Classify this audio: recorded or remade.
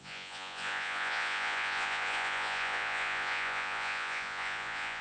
remade